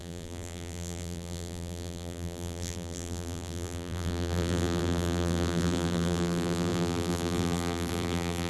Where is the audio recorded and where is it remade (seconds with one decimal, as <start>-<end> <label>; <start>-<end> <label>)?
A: 0.0-8.5 remade